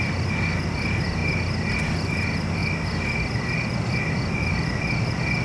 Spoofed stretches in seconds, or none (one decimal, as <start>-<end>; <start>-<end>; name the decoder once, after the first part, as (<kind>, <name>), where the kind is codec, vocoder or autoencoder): none